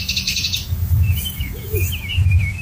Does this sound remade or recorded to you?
remade